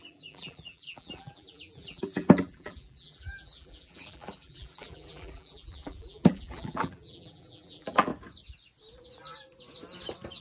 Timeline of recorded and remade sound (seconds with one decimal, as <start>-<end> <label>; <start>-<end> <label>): 0.0-8.1 remade; 8.1-10.4 recorded